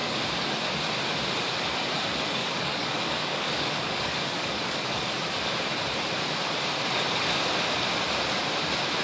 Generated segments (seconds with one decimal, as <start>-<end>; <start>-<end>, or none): 2.4-5.1

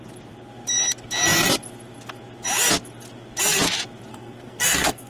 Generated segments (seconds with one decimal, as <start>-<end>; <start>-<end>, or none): 4.1-5.1

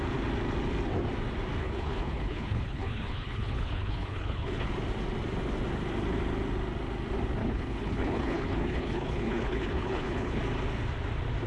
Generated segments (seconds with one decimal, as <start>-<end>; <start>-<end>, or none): 1.6-4.7; 7.4-10.4

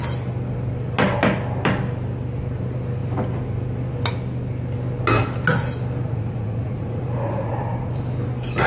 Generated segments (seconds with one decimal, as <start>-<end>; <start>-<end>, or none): 6.0-7.9

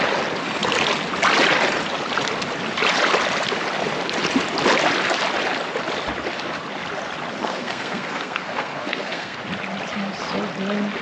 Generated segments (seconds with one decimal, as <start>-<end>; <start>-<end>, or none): 7.4-9.4

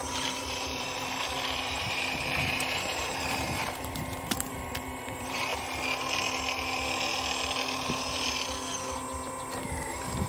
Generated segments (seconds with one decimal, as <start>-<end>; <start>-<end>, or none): 0.0-5.5; 9.9-10.3

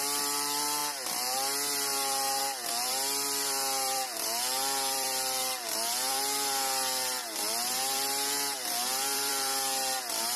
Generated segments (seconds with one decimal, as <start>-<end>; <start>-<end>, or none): 0.0-10.4